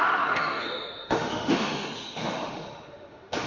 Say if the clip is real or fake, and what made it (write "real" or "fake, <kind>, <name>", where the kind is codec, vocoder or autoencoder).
fake, autoencoder, DAC-VAE